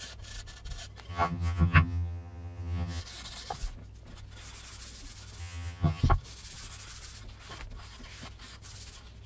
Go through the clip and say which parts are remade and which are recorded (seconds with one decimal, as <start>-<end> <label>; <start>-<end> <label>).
0.0-1.1 recorded; 1.1-3.0 remade; 3.0-5.4 recorded; 5.4-6.0 remade; 6.0-9.3 recorded